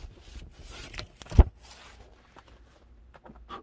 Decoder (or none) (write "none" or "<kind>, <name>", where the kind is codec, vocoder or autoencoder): vocoder, BigVGAN v2